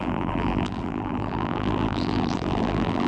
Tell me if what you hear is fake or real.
fake